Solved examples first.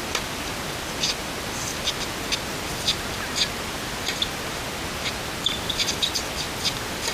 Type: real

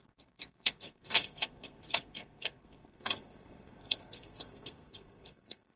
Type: fake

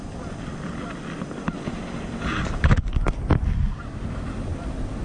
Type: real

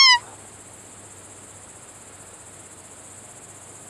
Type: real